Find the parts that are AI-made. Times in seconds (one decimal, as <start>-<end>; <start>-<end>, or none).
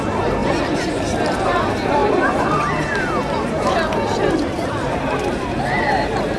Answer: 0.4-0.9